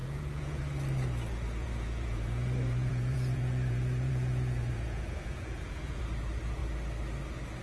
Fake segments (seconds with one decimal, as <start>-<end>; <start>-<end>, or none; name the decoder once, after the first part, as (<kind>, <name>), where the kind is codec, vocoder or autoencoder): 0.0-0.6 (vocoder, Vocos); 1.6-6.0

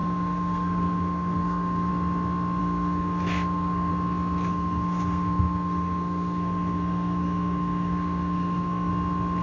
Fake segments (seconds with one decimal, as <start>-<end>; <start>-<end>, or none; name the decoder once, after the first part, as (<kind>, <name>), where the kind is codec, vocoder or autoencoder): 0.0-1.9 (codec, SNAC); 2.6-3.9; 4.5-8.9

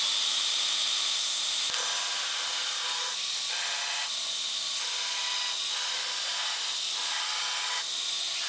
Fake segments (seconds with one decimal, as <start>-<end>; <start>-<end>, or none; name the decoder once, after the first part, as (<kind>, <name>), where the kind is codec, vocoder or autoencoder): none

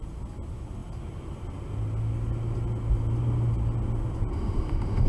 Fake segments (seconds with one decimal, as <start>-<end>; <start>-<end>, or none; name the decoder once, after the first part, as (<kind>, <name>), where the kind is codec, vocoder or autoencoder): 4.3-5.1 (autoencoder, DAC-VAE)

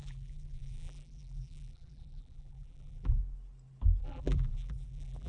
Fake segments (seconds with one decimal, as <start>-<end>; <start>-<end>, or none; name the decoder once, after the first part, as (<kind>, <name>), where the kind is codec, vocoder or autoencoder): 0.0-3.2 (vocoder, BigVGAN v2); 4.0-5.3

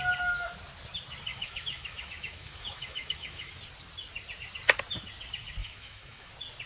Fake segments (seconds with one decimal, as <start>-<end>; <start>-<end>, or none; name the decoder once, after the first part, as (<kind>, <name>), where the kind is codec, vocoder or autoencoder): 1.3-3.5 (autoencoder, DAC-VAE); 5.6-6.3

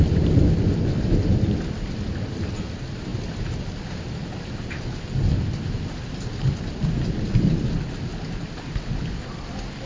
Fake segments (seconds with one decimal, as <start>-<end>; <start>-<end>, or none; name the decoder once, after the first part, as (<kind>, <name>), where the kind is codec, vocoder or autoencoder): 0.0-8.1 (vocoder, BigVGAN v2); 9.1-9.9

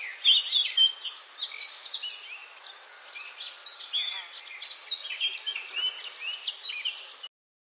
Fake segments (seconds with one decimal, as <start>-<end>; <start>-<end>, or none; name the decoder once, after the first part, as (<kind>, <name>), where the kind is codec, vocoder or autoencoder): none